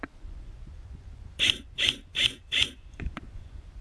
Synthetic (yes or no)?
yes